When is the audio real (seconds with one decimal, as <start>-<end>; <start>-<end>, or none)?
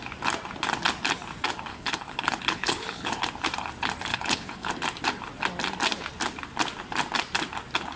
0.0-1.7; 3.2-4.1; 4.7-8.0